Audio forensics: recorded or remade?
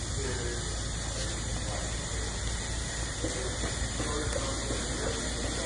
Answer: recorded